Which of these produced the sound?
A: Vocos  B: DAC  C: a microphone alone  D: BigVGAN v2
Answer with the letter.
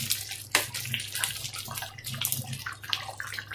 C